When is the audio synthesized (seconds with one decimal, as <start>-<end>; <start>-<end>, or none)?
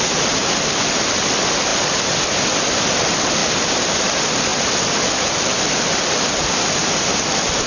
none